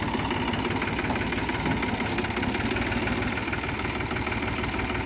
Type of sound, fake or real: real